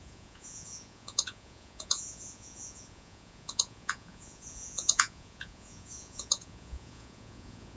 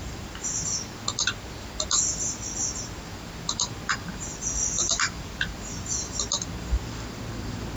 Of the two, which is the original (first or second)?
second